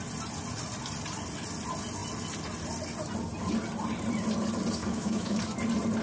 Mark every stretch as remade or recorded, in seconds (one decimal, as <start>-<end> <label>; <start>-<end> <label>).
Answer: 0.0-4.8 recorded; 4.8-5.4 remade; 5.4-6.0 recorded